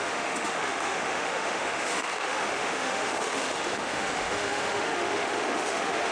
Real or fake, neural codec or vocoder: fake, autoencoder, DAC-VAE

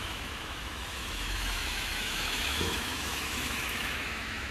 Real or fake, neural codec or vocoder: fake, autoencoder, DAC-VAE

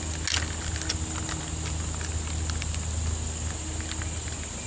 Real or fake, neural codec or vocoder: real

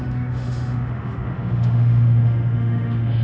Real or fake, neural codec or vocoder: fake, autoencoder, DAC-VAE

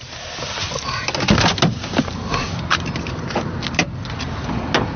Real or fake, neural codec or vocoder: real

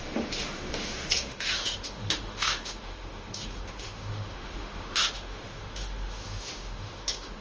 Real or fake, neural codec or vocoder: fake, autoencoder, DAC-VAE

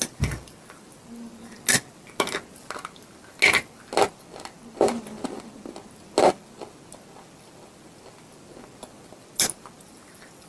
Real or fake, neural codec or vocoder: real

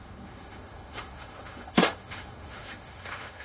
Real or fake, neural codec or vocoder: fake, autoencoder, DAC-VAE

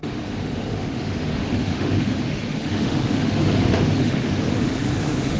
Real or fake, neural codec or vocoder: fake, autoencoder, DAC-VAE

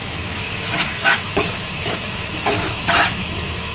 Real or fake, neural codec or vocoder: fake, autoencoder, DAC-VAE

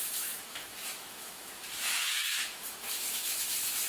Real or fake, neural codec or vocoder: fake, autoencoder, DAC-VAE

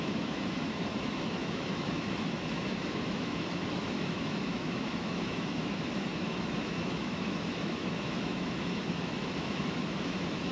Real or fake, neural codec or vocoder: fake, autoencoder, DAC-VAE